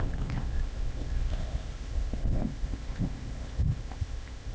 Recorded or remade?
remade